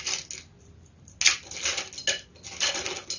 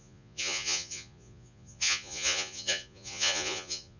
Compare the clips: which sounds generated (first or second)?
second